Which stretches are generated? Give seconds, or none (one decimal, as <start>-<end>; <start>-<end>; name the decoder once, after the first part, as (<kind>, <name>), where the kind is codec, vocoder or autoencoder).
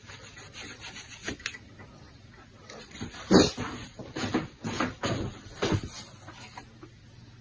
none